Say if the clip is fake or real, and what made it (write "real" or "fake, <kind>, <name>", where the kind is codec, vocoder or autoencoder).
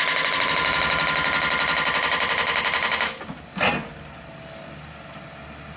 real